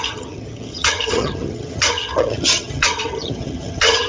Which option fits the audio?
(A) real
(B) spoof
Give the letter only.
B